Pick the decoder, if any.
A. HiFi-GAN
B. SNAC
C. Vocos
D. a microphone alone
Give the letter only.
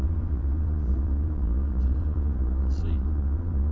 C